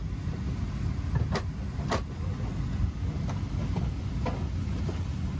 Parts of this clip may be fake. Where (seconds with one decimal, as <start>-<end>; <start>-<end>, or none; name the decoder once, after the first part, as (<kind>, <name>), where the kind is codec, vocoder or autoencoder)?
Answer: none